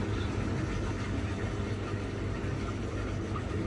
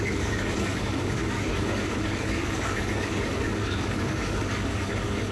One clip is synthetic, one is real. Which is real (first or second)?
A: first